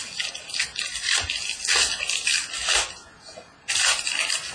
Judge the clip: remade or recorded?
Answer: recorded